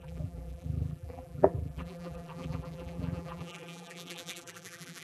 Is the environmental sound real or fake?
fake